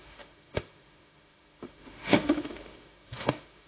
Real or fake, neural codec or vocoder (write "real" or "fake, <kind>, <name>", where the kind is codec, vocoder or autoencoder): fake, autoencoder, DAC-VAE